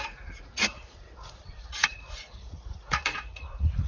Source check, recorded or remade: remade